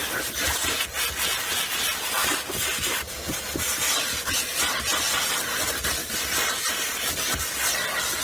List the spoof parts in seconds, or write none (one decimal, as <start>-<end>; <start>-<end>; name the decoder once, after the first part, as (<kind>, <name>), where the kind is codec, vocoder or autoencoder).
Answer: 2.2-5.3 (vocoder, BigVGAN v2); 6.0-8.2